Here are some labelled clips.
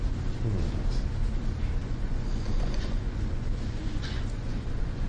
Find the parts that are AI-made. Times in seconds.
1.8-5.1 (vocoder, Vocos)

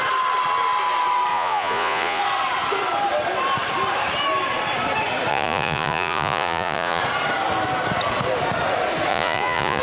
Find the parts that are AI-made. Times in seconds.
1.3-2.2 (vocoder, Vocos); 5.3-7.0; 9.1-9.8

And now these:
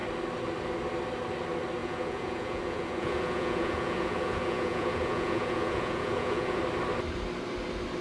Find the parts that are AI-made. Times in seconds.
1.8-6.6 (vocoder, Vocos)

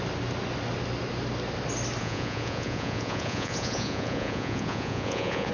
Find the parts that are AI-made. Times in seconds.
2.0-5.5 (vocoder, Vocos)

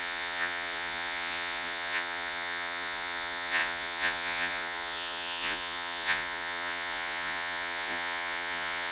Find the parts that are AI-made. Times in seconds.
0.0-8.9 (vocoder, Vocos)